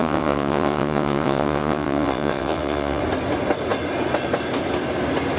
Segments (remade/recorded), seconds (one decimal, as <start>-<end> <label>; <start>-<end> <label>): 0.0-3.0 remade; 3.0-5.4 recorded